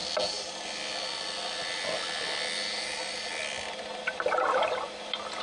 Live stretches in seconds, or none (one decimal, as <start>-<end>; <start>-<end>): 0.0-5.4